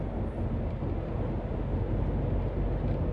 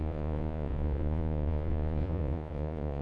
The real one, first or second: first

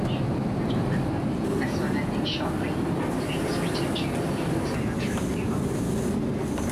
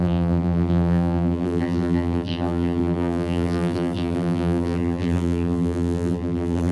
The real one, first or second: first